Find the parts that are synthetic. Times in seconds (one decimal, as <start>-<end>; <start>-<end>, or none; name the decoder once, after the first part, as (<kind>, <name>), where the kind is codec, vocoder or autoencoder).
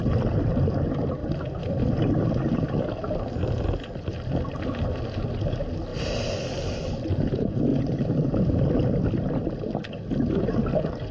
none